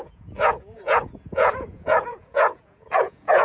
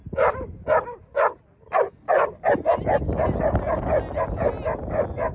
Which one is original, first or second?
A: second